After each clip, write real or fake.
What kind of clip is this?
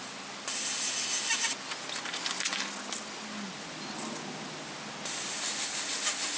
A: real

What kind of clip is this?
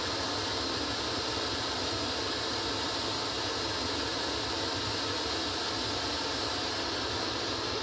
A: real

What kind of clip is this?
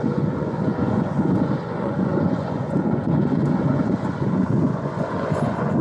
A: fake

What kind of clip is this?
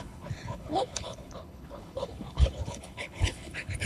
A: fake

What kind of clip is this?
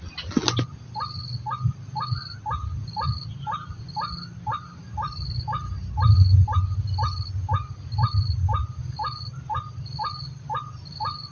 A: real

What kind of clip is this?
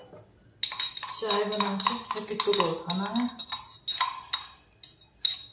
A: real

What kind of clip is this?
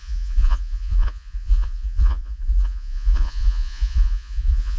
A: fake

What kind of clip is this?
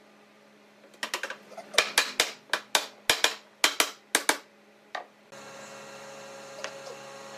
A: real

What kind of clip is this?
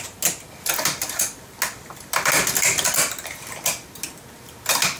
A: real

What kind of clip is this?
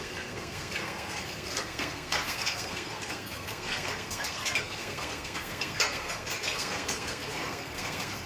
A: fake